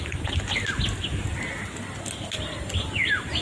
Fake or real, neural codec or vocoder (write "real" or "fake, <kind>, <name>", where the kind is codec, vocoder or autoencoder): real